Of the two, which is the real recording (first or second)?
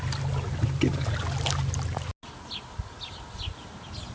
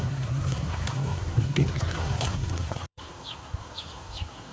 first